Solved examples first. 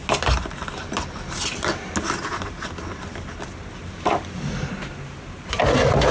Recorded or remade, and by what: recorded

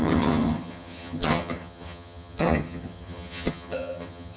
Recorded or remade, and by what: remade, vocoder, HiFi-GAN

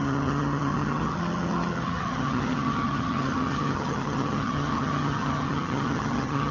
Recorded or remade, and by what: remade, vocoder, HiFi-GAN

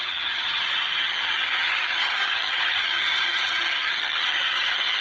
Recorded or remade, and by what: remade, vocoder, HiFi-GAN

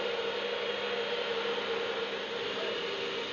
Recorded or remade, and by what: recorded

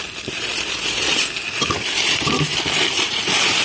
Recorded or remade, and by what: recorded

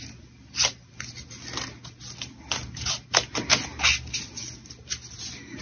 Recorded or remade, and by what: recorded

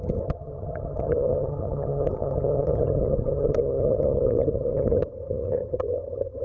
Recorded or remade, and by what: remade, vocoder, HiFi-GAN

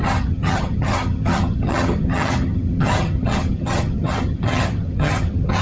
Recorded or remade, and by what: remade, vocoder, HiFi-GAN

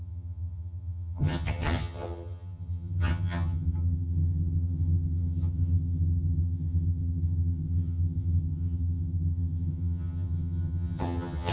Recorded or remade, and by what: remade, vocoder, HiFi-GAN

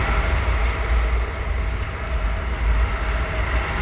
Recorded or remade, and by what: recorded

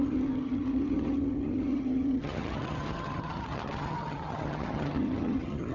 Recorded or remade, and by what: remade, vocoder, HiFi-GAN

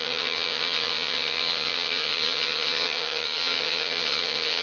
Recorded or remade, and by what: remade, vocoder, HiFi-GAN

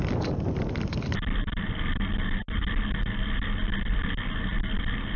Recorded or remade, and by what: recorded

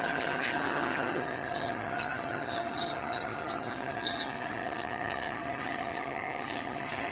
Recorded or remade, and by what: remade, vocoder, HiFi-GAN